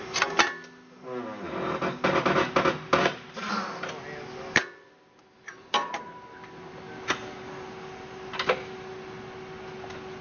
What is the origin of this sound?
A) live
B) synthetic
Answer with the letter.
A